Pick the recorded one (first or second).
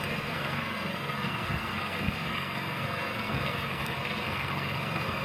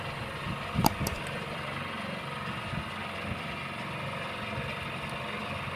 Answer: second